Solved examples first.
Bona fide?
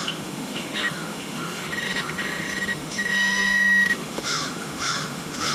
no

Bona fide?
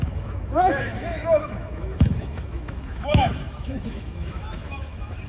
no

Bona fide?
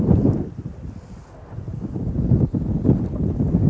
yes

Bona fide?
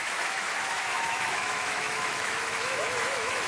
no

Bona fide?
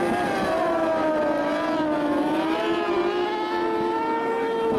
yes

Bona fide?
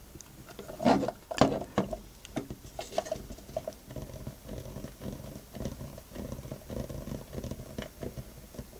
yes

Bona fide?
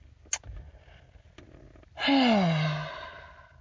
yes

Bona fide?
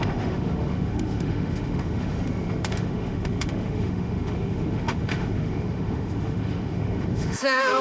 no